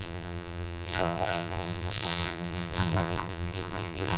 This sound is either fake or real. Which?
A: fake